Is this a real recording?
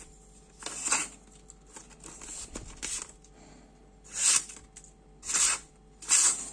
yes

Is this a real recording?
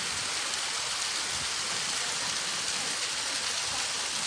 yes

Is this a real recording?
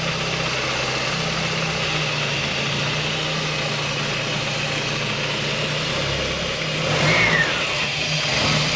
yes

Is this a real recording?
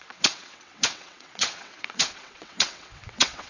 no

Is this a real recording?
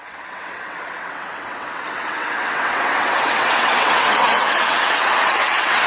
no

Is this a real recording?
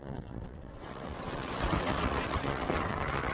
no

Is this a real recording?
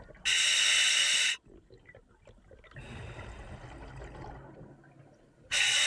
yes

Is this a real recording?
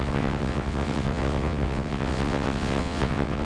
no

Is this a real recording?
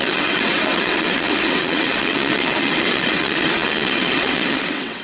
no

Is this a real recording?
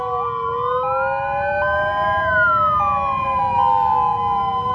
yes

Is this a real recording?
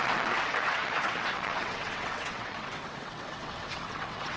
no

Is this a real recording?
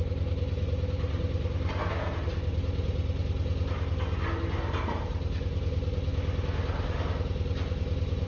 yes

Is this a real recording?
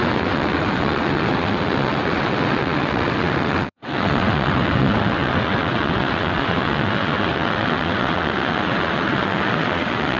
no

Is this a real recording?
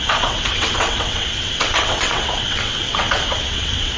no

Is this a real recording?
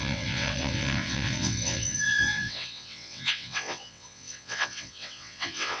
no